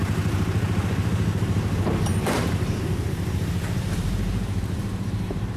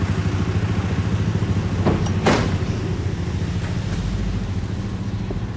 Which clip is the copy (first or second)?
first